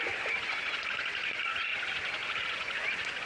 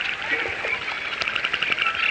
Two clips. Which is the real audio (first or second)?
second